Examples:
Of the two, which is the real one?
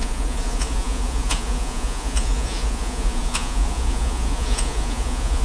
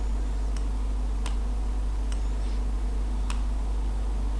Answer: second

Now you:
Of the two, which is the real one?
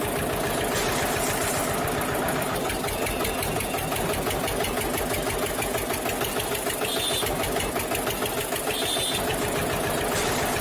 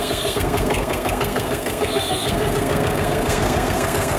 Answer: first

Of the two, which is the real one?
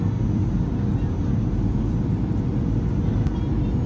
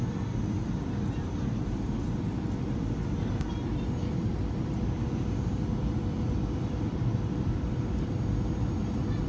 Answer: first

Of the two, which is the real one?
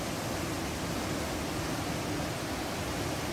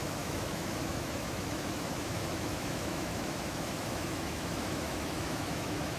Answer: first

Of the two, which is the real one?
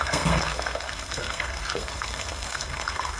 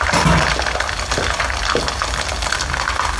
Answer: second